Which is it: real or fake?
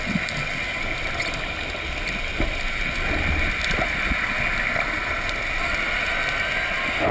real